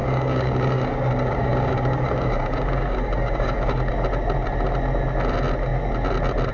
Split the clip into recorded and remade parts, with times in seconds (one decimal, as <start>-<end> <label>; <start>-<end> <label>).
0.0-3.9 remade; 3.9-6.5 recorded